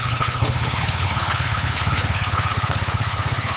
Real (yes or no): no